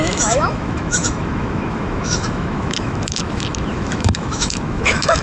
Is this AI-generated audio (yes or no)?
yes